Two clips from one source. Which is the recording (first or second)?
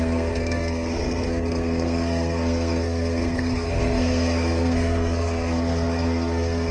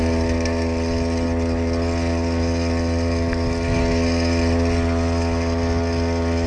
second